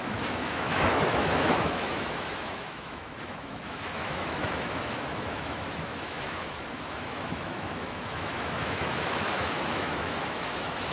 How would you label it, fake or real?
fake